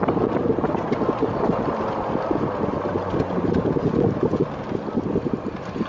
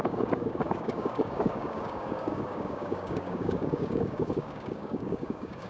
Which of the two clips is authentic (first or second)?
first